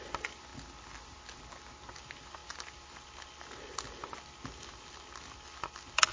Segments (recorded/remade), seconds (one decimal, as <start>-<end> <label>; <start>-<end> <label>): 0.0-6.1 recorded